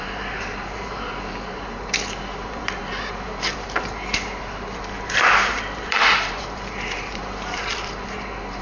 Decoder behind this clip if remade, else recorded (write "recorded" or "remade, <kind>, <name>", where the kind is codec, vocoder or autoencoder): remade, vocoder, BigVGAN v2